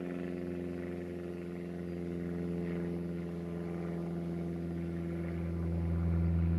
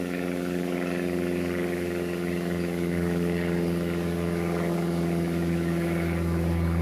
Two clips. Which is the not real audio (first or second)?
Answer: second